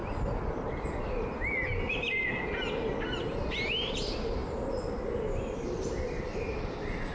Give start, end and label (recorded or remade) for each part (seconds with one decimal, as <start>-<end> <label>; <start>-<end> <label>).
0.0-7.1 recorded